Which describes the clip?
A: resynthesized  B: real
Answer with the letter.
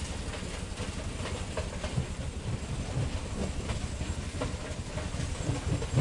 B